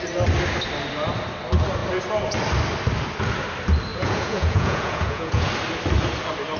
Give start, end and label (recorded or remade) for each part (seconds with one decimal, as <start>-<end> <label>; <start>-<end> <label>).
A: 0.0-3.9 recorded; 3.9-5.5 remade; 5.5-6.6 recorded